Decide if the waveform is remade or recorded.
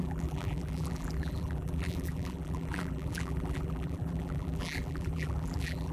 remade